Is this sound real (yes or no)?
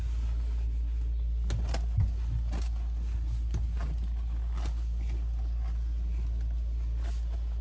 yes